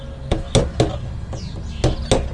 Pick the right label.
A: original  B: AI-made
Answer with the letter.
A